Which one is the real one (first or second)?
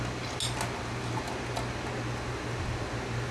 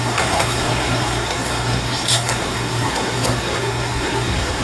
first